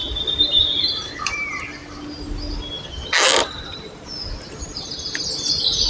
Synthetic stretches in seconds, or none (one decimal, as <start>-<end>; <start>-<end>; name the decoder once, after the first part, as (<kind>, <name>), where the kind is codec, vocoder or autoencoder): 0.0-1.8 (vocoder, BigVGAN v2); 5.3-5.9